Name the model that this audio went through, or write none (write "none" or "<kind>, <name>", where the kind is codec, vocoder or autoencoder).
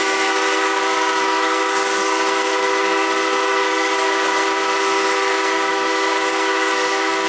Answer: codec, SNAC